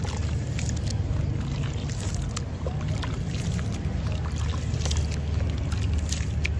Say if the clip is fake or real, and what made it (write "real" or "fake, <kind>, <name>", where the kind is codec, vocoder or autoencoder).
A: real